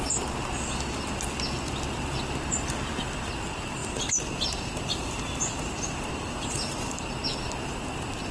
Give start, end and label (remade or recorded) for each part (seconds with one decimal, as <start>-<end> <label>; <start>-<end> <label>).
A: 0.0-3.8 recorded; 3.8-7.1 remade; 7.1-8.3 recorded